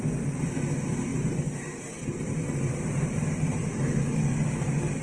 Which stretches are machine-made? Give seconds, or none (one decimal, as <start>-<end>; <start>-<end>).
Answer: 1.1-3.7